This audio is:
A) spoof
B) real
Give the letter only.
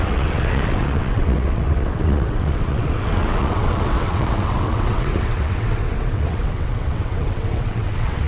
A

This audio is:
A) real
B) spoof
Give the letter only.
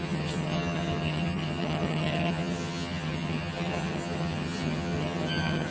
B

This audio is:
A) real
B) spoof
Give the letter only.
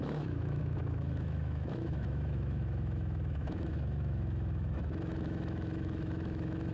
B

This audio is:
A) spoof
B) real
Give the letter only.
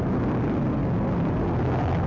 B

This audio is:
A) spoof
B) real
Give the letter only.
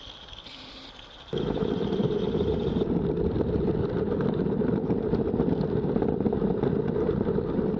B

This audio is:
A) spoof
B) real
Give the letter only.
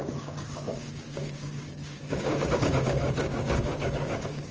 A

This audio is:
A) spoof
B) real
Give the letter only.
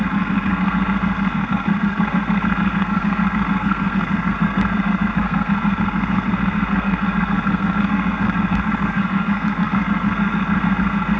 A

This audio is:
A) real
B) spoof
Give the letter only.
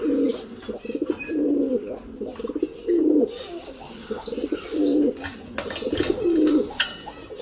A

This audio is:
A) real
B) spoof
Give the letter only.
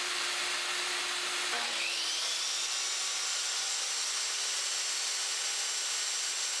A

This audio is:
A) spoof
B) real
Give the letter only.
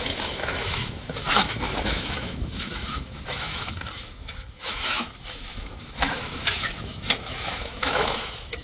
A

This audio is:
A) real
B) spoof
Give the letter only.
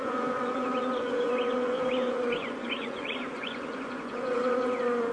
B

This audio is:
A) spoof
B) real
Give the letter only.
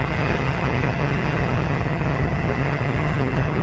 A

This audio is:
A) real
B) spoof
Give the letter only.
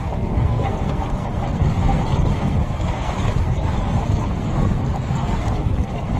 B